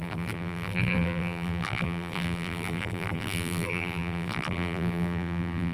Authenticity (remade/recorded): remade